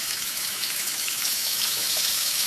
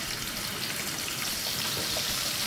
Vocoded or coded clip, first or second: first